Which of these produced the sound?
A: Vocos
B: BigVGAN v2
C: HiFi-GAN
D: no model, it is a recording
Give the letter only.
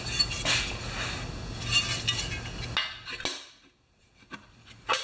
D